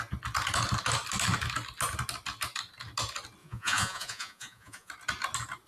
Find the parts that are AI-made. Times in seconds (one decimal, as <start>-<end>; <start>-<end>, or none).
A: 3.4-4.9